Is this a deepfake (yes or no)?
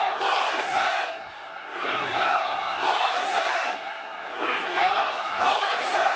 yes